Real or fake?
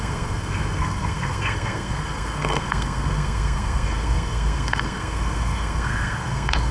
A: fake